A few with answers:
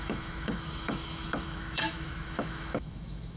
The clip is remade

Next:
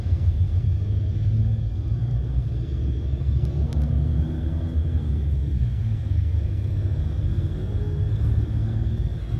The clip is remade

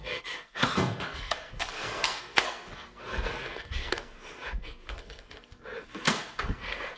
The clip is remade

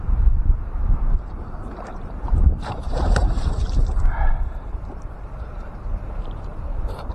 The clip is remade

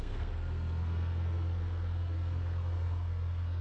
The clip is remade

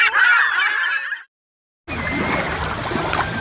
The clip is recorded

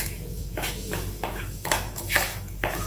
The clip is remade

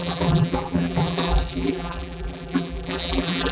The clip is remade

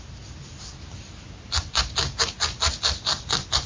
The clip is recorded